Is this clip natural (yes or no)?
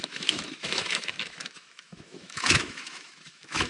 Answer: no